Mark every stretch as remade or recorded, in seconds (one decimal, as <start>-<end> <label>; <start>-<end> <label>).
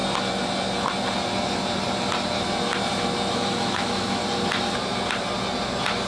0.0-3.3 recorded; 3.3-4.2 remade; 4.2-6.1 recorded